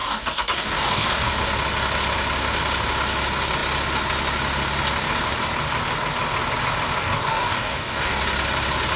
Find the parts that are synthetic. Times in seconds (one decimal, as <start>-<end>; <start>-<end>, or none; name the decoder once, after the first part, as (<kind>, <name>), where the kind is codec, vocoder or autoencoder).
0.0-1.3 (codec, DAC); 7.0-8.2